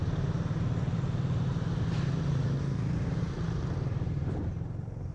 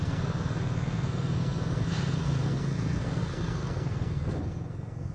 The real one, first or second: first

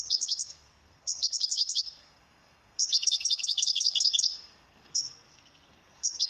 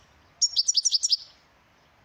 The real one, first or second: second